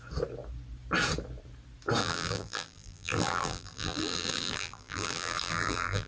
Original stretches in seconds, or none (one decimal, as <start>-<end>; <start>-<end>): 0.0-2.0